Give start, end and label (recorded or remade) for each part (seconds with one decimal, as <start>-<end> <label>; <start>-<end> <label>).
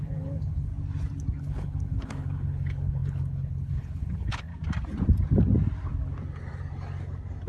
0.0-0.7 remade; 0.7-1.4 recorded; 1.4-4.5 remade; 4.5-7.5 recorded